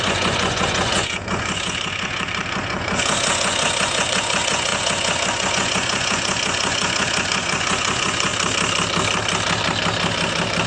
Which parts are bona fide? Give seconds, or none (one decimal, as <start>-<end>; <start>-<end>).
8.3-10.7